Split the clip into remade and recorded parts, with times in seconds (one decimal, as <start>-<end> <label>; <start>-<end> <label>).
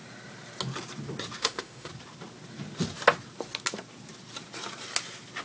0.0-1.4 recorded; 1.4-1.9 remade; 1.9-5.4 recorded